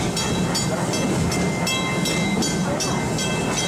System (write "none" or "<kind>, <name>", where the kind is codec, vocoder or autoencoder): none